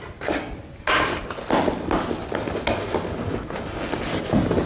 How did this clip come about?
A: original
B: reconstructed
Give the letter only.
A